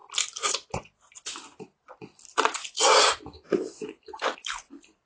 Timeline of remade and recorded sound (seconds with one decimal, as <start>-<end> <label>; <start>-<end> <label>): 0.0-1.9 remade; 1.9-2.3 recorded; 2.3-4.6 remade; 4.6-5.1 recorded